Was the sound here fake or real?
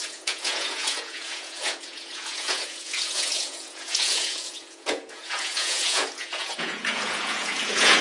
fake